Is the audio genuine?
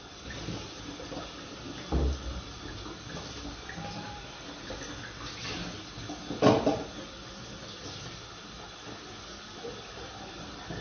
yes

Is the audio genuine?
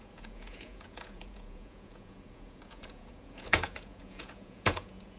no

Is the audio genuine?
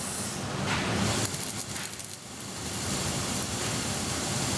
yes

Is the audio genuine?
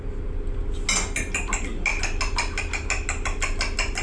yes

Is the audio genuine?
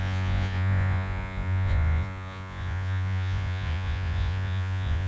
no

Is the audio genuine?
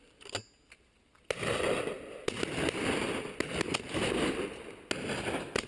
yes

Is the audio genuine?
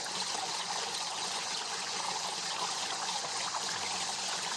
no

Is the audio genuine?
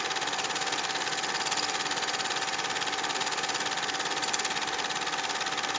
yes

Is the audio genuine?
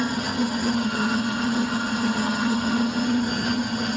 no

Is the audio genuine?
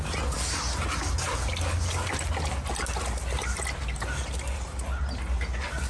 yes